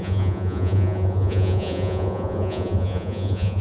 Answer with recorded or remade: remade